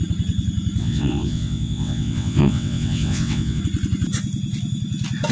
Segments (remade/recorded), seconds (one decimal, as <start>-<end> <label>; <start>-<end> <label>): 0.0-0.8 recorded; 0.8-3.6 remade; 3.6-5.3 recorded